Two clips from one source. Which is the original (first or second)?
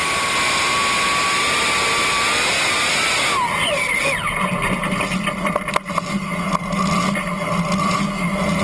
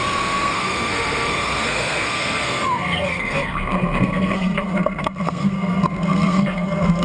first